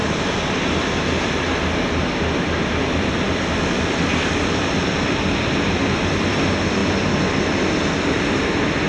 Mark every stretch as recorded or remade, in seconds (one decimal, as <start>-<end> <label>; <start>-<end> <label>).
0.0-2.8 recorded; 2.8-6.8 remade; 6.8-7.5 recorded; 7.5-8.9 remade